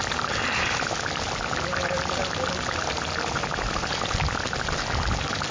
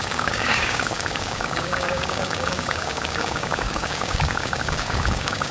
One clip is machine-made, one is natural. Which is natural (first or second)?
first